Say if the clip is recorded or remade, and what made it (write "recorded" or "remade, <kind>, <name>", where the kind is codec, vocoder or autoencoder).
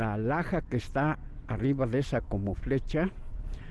recorded